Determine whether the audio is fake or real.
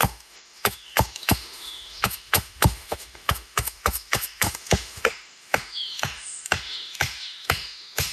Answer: fake